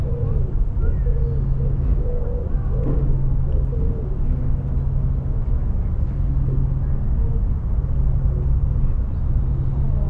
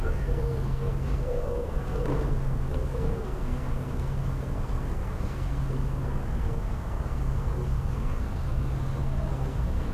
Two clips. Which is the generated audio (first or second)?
second